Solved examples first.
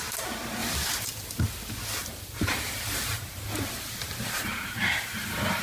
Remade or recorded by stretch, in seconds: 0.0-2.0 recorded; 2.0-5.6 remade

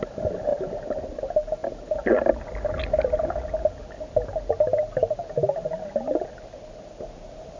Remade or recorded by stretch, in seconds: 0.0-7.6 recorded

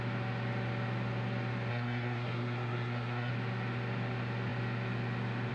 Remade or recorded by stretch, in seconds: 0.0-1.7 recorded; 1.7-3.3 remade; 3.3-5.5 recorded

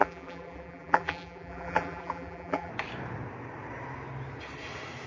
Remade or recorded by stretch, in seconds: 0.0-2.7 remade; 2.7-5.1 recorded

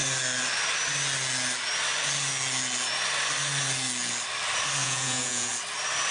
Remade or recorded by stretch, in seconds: 0.0-4.8 recorded; 4.8-5.5 remade; 5.5-6.1 recorded